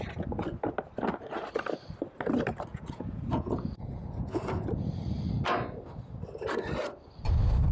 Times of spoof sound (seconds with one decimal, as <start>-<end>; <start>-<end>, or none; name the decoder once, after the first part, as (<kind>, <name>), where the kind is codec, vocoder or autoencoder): 2.7-4.8 (vocoder, Vocos)